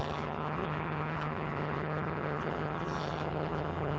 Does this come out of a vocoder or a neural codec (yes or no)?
yes